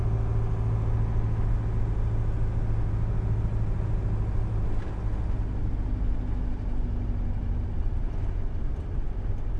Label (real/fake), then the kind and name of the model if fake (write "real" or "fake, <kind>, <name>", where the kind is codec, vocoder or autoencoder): real